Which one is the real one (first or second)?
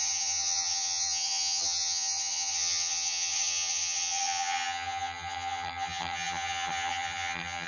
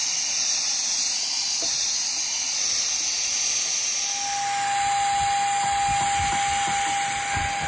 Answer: second